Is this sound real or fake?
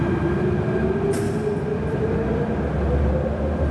real